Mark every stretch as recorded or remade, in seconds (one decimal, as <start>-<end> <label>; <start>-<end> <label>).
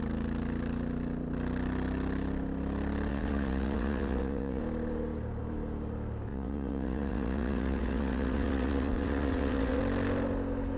0.0-3.1 recorded; 3.1-4.6 remade; 4.6-6.3 recorded; 6.3-9.8 remade; 9.8-10.8 recorded